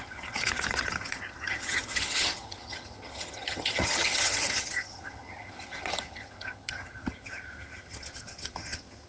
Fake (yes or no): yes